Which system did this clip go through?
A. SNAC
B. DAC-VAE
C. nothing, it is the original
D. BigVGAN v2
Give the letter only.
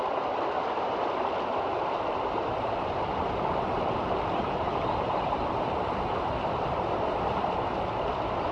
D